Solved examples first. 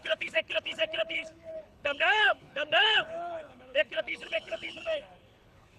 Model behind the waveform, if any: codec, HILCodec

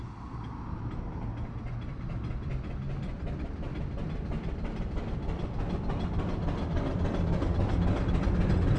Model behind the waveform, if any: none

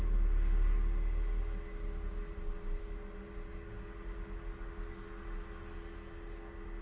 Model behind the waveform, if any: none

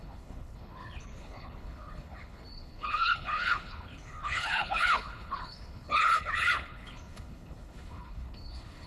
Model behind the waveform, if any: codec, HILCodec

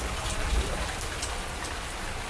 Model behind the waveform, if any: none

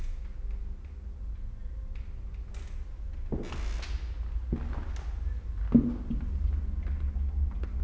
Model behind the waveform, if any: none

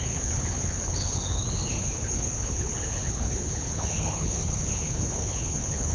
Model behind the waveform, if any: codec, HILCodec